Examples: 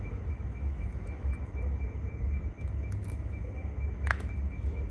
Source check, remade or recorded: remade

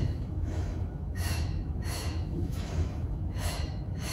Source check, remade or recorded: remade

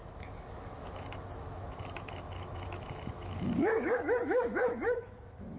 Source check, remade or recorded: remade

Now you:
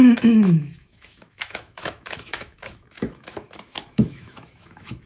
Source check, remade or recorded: remade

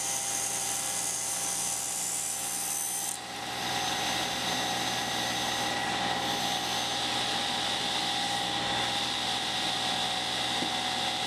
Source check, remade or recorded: recorded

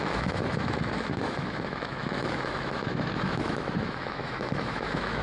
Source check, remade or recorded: remade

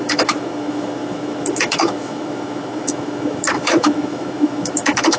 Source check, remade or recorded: remade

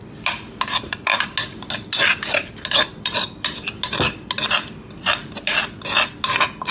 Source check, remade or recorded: recorded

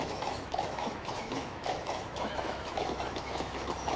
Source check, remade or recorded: remade